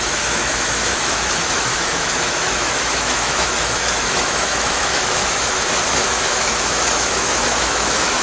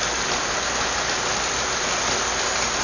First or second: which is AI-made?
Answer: first